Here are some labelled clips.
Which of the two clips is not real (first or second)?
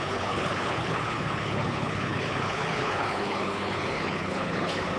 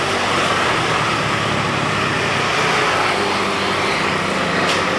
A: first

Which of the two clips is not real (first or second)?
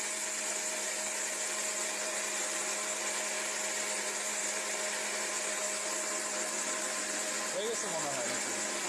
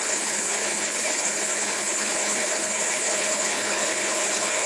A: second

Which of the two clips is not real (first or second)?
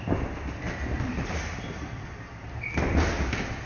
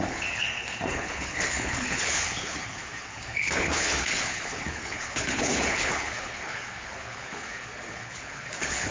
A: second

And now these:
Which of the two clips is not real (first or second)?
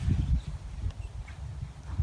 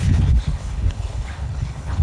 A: second